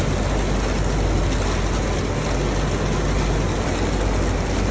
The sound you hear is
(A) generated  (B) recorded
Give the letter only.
B